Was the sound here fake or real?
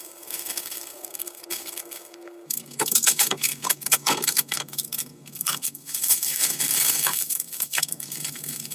fake